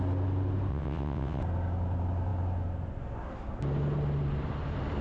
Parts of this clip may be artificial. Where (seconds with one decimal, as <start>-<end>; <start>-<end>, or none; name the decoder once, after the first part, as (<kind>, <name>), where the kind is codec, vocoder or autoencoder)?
0.7-1.4 (vocoder, WaveNeXt)